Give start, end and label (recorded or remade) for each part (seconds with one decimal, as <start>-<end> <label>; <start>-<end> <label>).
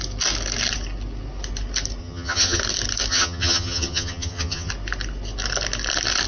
0.0-2.0 recorded; 2.0-2.6 remade; 2.6-3.1 recorded; 3.1-4.7 remade; 4.7-6.3 recorded